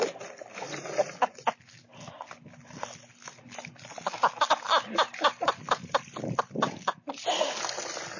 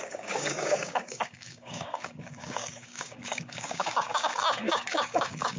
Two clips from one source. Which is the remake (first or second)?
second